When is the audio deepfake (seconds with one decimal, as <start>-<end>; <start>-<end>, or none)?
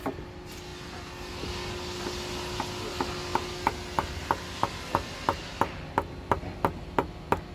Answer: none